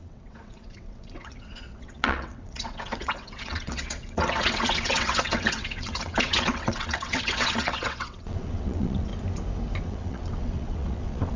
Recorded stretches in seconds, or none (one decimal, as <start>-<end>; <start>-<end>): 9.1-9.8